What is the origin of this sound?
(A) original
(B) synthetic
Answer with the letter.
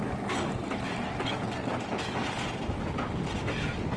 A